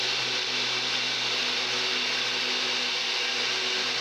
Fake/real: real